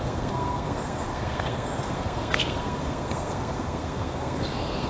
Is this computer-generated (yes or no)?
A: yes